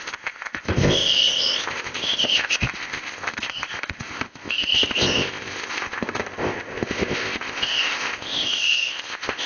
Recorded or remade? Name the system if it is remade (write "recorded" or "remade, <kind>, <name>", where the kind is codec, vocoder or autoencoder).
remade, codec, ZipCodec